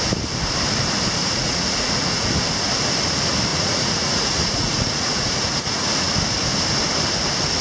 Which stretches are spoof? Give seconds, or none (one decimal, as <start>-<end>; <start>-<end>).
1.2-2.3; 3.5-6.2